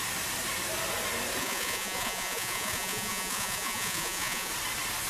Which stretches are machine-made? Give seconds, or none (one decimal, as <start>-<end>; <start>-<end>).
1.4-4.5